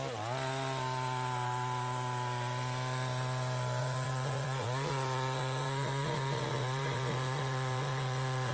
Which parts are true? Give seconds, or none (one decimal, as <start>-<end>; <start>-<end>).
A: 0.0-3.8